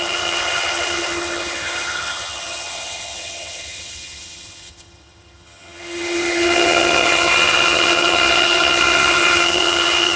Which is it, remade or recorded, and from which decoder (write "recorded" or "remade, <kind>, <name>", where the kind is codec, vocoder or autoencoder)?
remade, vocoder, HiFi-GAN